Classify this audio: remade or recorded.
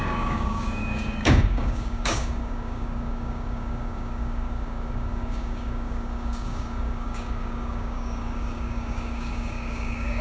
remade